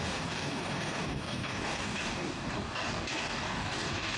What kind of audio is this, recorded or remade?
remade